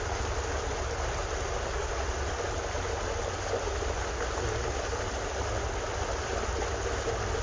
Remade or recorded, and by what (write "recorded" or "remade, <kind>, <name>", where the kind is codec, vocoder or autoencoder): recorded